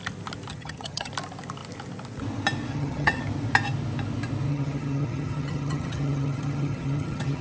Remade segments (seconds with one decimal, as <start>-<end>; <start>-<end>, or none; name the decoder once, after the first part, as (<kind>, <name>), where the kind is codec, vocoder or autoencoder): 0.5-1.1 (vocoder, HiFi-GAN); 2.7-3.2; 4.5-7.4